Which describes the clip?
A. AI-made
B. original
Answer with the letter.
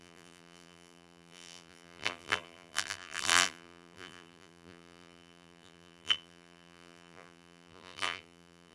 A